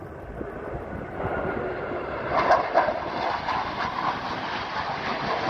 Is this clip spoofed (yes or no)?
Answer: no